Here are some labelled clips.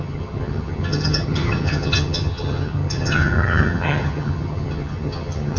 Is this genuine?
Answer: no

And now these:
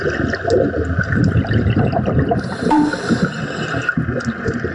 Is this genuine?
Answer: yes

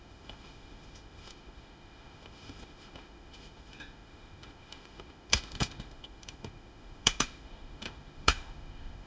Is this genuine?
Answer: no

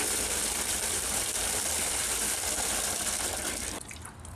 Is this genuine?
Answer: no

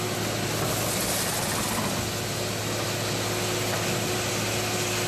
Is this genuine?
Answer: yes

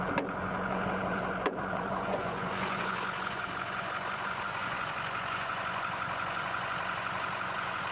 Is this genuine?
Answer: no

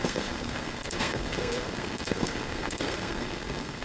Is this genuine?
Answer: no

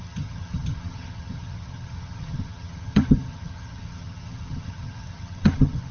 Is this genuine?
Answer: no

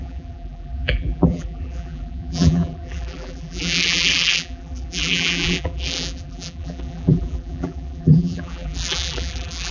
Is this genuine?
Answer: no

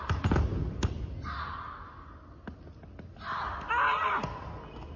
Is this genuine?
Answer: yes